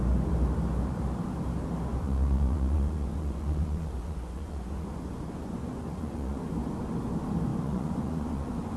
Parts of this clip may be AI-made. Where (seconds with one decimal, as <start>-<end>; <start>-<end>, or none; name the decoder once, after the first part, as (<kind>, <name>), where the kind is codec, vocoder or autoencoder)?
2.0-6.5 (vocoder, Vocos); 7.5-8.8